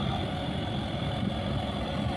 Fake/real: real